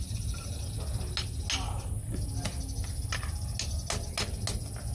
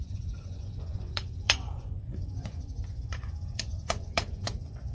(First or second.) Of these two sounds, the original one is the first